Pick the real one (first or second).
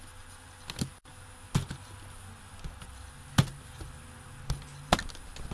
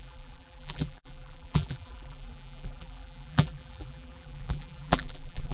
first